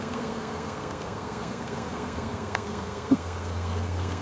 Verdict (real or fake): fake